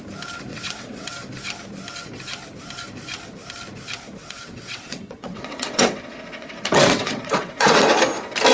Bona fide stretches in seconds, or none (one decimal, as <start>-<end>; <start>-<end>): 0.0-0.5; 1.1-4.2; 8.0-8.5